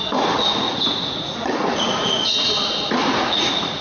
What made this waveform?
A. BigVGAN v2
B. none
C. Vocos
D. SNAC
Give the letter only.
C